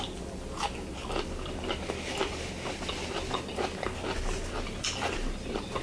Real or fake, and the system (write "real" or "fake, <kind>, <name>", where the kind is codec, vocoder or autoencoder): real